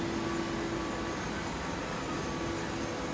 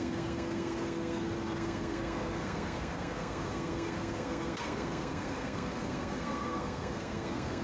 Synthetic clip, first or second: second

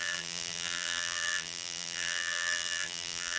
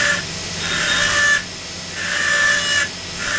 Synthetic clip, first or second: first